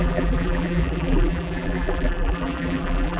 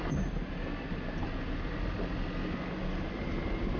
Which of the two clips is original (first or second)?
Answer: second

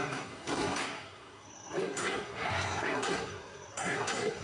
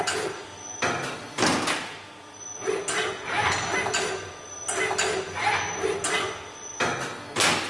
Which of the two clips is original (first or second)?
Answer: second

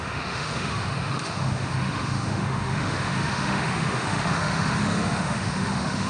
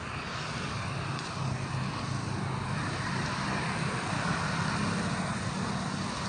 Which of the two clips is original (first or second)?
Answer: second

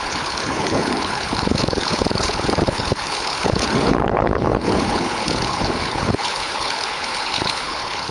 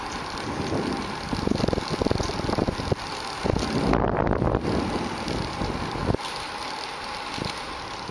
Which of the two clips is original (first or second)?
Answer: second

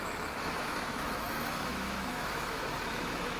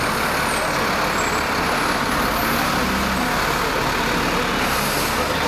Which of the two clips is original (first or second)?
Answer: second